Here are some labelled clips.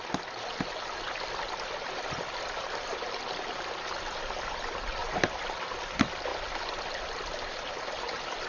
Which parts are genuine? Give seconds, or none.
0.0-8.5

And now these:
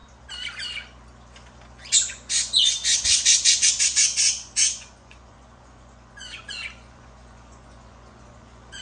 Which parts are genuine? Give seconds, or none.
0.0-1.9

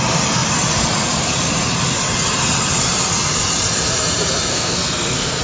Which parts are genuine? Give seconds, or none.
0.0-4.5